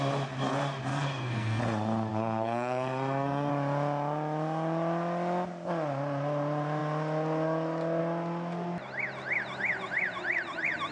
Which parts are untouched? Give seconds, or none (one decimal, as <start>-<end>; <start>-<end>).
0.0-0.9; 1.6-2.1; 3.5-10.9